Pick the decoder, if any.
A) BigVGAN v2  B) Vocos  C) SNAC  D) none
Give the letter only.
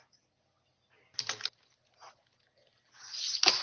D